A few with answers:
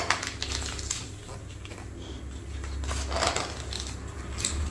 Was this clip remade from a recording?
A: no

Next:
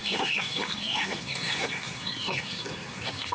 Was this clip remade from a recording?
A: yes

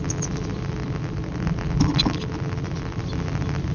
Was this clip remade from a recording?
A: no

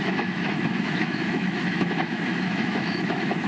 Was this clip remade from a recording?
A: yes